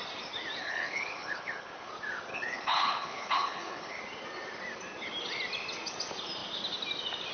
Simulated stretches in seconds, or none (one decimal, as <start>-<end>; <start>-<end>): 0.6-1.9; 2.3-4.0

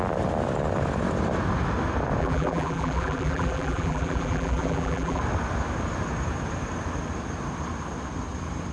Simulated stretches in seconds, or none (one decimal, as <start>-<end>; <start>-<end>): 2.2-5.2

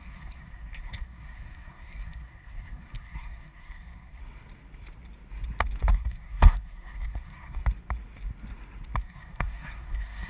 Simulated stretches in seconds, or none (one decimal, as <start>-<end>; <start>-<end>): 0.0-4.2; 5.9-7.6; 9.0-10.3

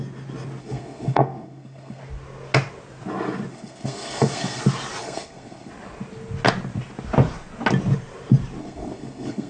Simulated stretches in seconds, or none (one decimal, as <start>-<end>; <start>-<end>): 0.6-2.0; 3.5-4.6; 5.0-5.7; 8.6-9.5

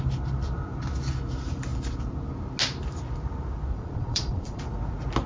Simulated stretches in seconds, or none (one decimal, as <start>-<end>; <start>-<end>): 3.7-4.6

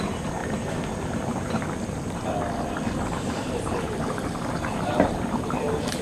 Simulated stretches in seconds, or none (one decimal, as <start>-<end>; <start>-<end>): 0.0-0.4; 3.1-6.0